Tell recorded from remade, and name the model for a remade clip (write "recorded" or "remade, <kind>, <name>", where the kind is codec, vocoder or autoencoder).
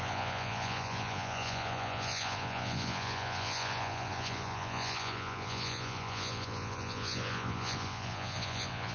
remade, vocoder, Vocos